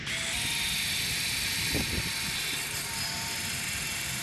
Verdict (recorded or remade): recorded